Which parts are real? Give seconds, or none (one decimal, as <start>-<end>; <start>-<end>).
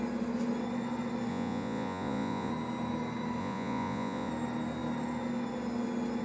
0.0-1.3; 2.5-3.4; 4.3-6.2